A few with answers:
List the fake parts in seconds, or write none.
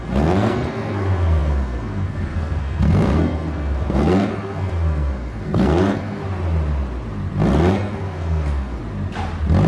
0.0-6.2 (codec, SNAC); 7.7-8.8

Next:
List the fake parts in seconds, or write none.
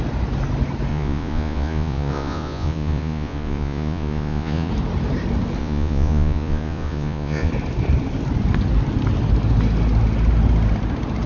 0.9-4.7 (vocoder, Vocos); 5.6-7.5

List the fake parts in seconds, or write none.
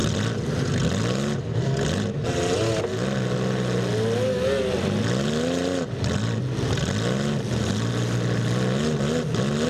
none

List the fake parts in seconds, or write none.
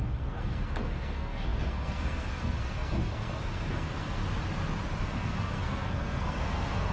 0.0-4.2 (codec, SNAC); 5.0-6.9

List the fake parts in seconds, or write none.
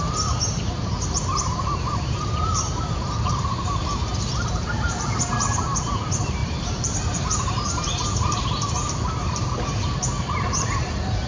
0.0-11.3 (vocoder, BigVGAN v2)